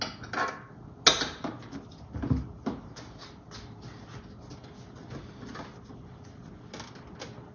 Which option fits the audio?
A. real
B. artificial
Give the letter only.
A